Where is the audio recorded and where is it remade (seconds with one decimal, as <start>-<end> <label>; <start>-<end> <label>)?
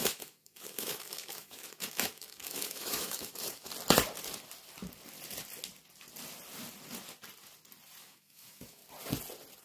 0.0-3.7 remade; 3.7-8.0 recorded; 8.0-8.8 remade; 8.8-9.6 recorded